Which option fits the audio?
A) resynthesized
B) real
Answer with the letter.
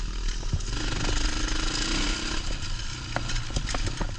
B